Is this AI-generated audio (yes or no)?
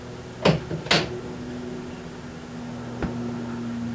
no